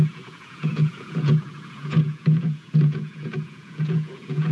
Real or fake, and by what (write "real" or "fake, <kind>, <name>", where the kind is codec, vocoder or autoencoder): fake, vocoder, Vocos